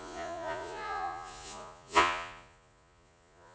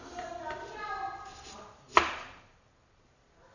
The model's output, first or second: first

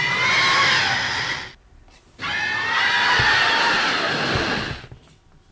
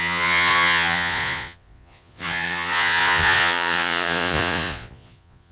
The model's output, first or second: second